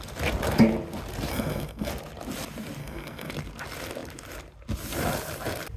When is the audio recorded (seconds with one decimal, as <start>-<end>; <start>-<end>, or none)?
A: 0.0-1.3; 1.9-2.8; 3.3-5.8